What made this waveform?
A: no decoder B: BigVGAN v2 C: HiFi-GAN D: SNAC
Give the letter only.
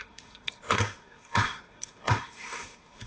D